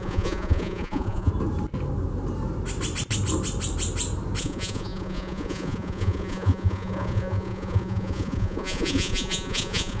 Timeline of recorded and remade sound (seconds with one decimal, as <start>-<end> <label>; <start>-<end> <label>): 0.0-1.3 remade; 1.3-4.4 recorded; 4.4-10.0 remade